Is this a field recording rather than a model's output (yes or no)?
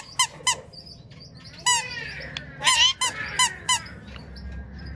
yes